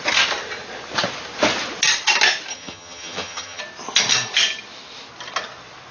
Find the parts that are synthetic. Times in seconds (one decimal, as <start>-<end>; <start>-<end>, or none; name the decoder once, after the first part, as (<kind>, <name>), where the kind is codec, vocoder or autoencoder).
2.5-3.6 (vocoder, HiFi-GAN)

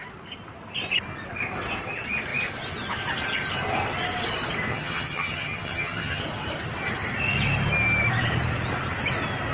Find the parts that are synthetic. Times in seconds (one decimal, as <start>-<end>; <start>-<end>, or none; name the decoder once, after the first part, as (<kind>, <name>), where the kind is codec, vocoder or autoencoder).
4.7-6.2 (vocoder, HiFi-GAN)

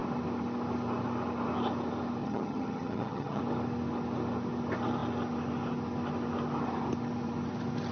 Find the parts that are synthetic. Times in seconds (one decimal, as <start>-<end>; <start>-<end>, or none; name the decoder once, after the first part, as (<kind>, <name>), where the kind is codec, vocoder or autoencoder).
2.2-3.4 (vocoder, HiFi-GAN)